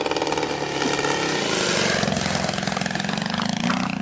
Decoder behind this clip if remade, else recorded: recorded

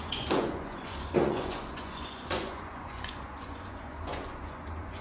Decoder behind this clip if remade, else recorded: remade, vocoder, Vocos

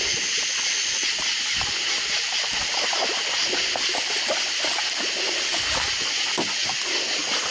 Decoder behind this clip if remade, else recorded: recorded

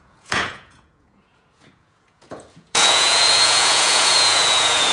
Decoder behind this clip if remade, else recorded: remade, vocoder, Vocos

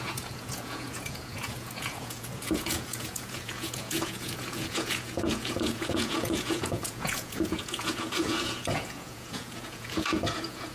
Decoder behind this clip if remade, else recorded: remade, vocoder, Vocos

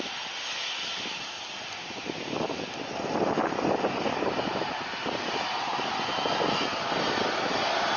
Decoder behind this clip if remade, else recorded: recorded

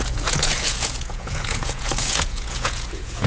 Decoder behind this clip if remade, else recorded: remade, vocoder, Vocos